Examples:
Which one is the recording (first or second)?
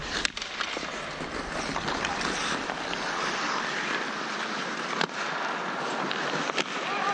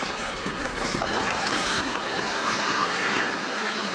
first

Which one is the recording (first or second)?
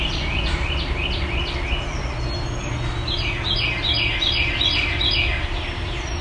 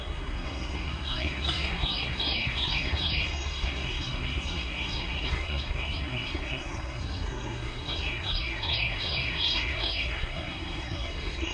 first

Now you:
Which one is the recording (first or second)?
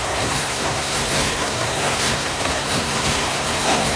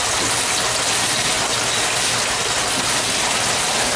second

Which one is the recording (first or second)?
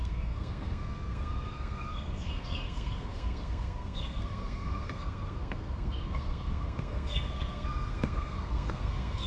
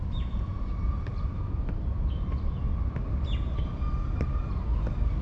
second